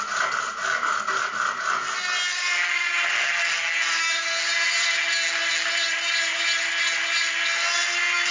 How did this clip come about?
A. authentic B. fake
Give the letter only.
A